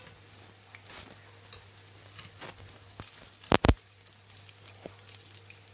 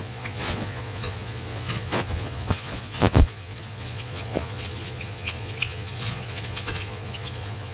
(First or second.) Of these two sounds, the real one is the first